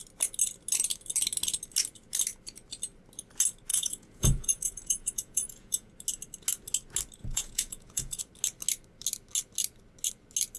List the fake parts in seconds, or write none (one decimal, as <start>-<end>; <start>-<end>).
3.7-5.9; 7.2-8.2